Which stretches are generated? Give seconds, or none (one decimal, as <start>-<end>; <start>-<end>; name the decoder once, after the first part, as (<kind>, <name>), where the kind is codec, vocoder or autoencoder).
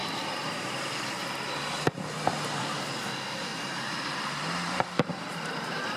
0.0-0.9 (vocoder, BigVGAN v2); 3.5-6.0